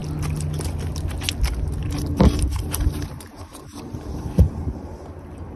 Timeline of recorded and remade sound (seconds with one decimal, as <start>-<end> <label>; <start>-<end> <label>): 0.0-1.8 recorded; 1.8-5.6 remade